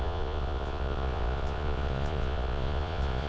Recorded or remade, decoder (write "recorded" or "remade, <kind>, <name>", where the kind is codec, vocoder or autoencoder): remade, vocoder, Vocos